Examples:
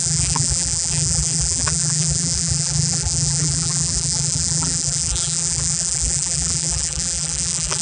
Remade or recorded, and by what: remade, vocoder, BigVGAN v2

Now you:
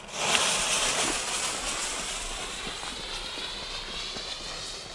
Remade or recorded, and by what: remade, vocoder, BigVGAN v2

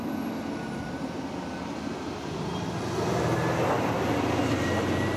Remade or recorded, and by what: recorded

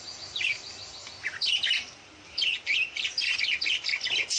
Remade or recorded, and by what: remade, vocoder, BigVGAN v2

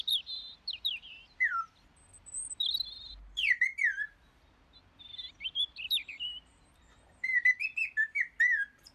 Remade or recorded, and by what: remade, vocoder, BigVGAN v2